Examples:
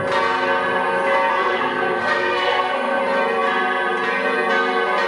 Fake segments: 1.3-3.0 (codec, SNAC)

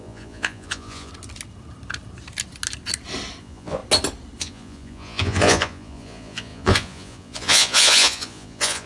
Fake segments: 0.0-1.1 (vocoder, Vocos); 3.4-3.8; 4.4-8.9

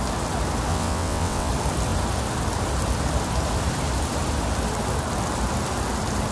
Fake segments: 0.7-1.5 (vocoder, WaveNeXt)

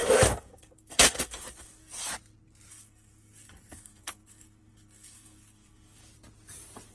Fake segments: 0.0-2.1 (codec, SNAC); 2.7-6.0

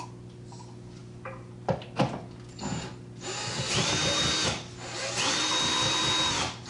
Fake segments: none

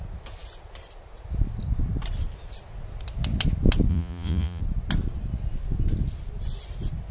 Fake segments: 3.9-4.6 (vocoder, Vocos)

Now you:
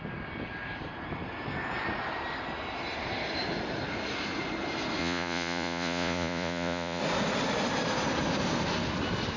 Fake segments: 5.0-7.0 (vocoder, Vocos)